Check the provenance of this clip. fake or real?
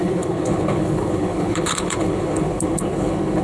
fake